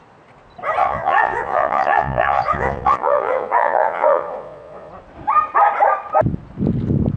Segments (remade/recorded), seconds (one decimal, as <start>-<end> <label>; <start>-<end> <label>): 0.0-0.8 recorded; 0.8-4.9 remade; 4.9-7.2 recorded